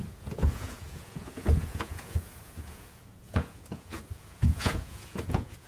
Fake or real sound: fake